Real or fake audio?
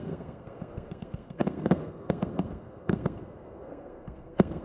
fake